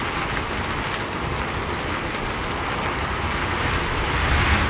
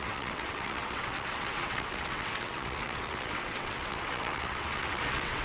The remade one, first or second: second